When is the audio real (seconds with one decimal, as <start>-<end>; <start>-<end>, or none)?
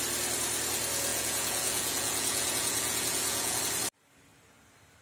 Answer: 0.0-1.1; 3.6-5.0